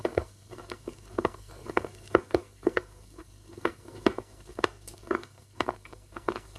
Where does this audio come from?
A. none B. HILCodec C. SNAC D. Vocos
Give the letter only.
C